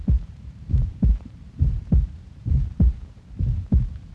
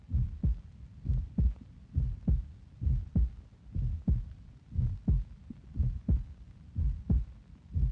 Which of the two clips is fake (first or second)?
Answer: first